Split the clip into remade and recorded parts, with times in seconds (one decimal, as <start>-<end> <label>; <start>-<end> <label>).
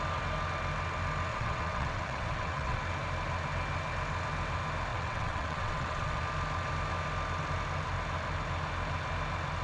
0.0-1.3 recorded; 1.3-2.8 remade; 2.8-4.9 recorded; 4.9-6.2 remade; 6.2-9.6 recorded